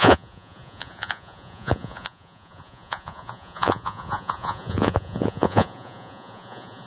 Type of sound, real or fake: fake